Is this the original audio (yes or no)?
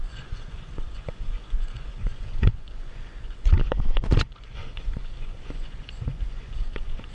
no